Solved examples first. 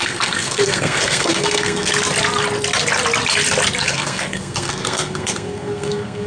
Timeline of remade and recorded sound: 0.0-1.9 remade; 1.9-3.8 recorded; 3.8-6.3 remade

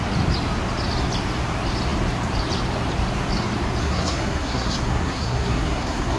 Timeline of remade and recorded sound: 0.0-3.8 recorded; 3.8-6.2 remade

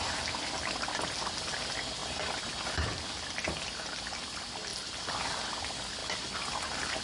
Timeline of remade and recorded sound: 0.0-7.0 recorded

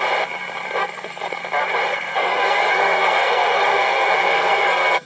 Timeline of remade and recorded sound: 0.0-0.8 recorded; 0.8-1.4 remade; 1.4-1.9 recorded; 1.9-5.1 remade